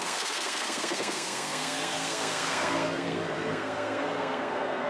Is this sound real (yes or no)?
no